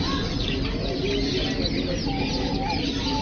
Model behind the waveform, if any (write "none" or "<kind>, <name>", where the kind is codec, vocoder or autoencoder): none